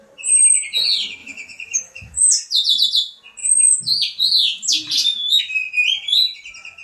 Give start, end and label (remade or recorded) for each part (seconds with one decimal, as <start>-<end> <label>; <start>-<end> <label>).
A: 0.0-1.2 recorded; 1.2-2.3 remade; 2.3-6.8 recorded